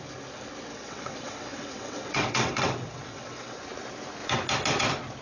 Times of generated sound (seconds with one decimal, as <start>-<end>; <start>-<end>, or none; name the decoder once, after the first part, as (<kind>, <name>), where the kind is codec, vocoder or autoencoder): 0.7-3.6 (vocoder, WaveNeXt)